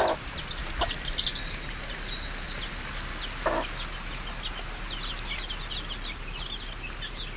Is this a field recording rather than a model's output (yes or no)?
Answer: yes